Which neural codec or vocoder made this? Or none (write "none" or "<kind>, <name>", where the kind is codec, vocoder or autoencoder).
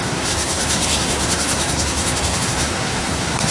codec, SNAC